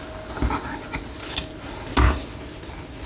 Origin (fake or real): real